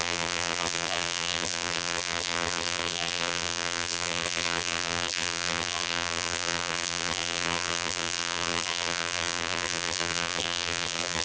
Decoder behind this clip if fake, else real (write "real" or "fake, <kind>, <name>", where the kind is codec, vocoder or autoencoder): fake, vocoder, BigVGAN v2